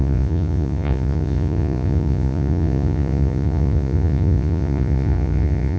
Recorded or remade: remade